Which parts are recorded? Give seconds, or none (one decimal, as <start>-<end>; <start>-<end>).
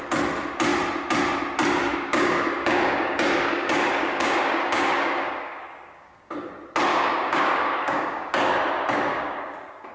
0.0-1.8; 6.5-6.9; 8.5-9.1